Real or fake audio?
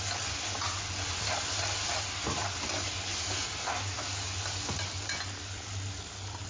real